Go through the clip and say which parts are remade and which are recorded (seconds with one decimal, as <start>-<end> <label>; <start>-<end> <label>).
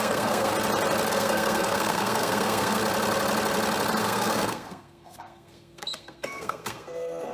0.0-0.5 remade; 0.5-1.1 recorded; 1.1-2.8 remade; 2.8-4.0 recorded; 4.0-7.3 remade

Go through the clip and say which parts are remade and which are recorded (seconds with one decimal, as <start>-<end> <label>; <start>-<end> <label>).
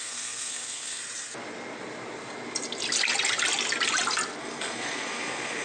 0.0-1.0 remade; 1.0-4.4 recorded; 4.4-5.6 remade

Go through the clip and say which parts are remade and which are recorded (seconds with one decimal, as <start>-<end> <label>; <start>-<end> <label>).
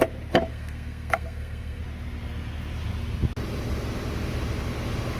0.0-0.5 recorded; 0.5-1.8 remade; 1.8-5.2 recorded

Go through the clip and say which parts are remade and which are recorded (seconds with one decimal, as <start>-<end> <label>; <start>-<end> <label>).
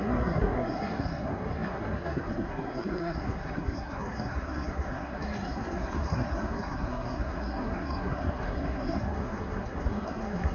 0.0-10.5 remade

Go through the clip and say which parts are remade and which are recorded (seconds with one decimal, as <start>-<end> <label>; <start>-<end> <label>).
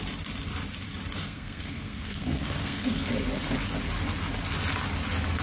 0.0-1.2 recorded; 1.2-3.1 remade; 3.1-5.4 recorded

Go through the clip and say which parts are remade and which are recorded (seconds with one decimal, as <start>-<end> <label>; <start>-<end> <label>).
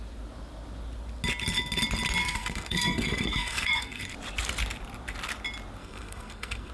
0.0-2.2 recorded; 2.2-4.0 remade; 4.0-5.8 recorded; 5.8-6.7 remade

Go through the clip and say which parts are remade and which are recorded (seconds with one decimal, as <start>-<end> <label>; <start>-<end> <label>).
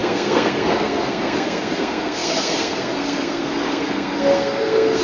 0.0-5.0 remade